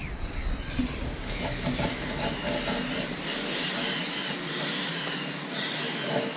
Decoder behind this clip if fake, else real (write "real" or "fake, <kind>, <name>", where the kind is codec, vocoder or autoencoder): real